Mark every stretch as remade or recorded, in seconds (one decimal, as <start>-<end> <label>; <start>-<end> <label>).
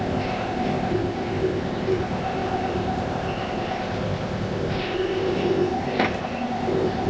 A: 0.0-7.1 remade